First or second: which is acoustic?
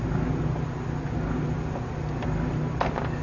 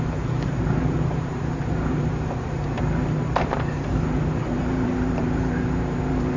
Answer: first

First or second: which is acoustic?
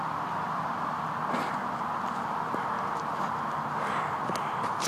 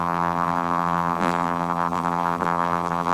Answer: first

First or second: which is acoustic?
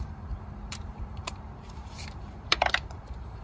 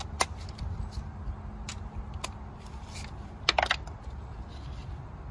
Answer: second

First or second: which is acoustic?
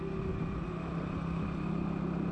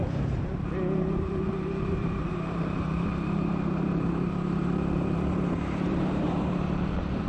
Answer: first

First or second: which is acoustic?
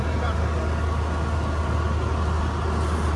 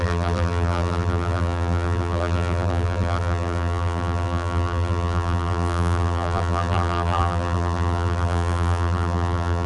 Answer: first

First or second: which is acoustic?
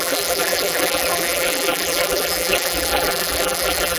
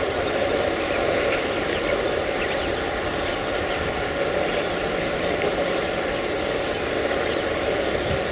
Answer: second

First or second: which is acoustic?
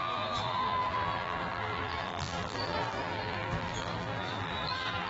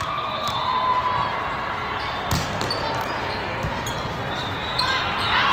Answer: second